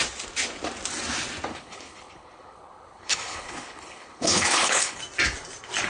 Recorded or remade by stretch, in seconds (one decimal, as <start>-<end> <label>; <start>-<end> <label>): 0.0-1.5 recorded; 1.5-5.0 remade; 5.0-5.9 recorded